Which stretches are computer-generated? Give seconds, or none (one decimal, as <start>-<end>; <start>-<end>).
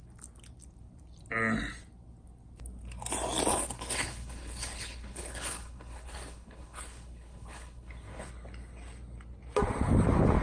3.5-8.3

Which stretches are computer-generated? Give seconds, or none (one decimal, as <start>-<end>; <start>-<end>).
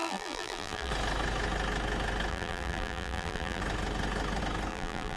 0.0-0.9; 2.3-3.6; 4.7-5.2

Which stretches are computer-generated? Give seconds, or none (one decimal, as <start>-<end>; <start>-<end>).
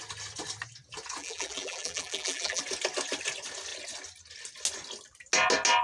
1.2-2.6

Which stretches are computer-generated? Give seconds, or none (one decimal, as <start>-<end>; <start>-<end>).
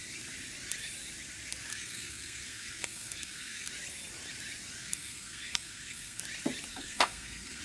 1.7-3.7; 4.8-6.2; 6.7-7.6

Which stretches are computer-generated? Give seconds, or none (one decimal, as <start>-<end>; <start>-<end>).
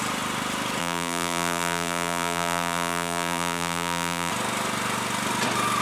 0.8-4.3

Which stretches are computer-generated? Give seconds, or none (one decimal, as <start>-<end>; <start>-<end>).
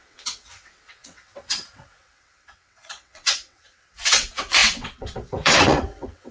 0.0-6.3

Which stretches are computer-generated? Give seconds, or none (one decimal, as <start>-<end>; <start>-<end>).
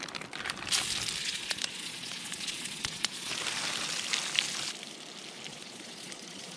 1.2-3.3; 5.5-6.6